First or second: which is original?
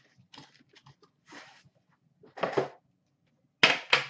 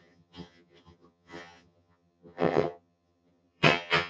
first